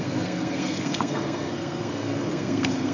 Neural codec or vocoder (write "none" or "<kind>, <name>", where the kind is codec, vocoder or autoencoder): codec, SNAC